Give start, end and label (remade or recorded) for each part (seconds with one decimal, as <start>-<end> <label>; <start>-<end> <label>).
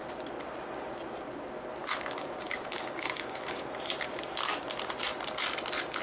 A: 0.0-1.8 recorded; 1.8-3.6 remade; 3.6-6.0 recorded